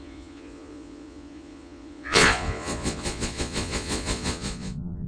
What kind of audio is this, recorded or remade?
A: remade